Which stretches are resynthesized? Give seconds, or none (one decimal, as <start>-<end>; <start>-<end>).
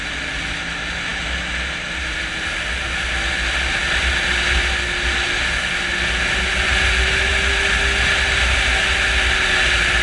none